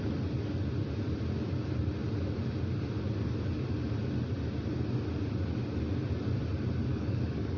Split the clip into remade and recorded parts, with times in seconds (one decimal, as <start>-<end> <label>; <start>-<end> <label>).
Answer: 0.0-6.9 recorded; 6.9-7.6 remade